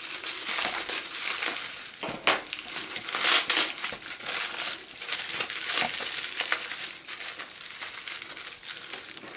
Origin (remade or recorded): recorded